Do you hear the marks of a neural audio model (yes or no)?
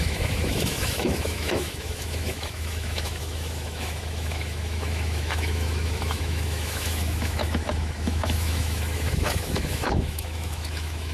yes